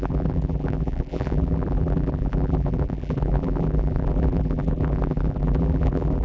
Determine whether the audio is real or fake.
fake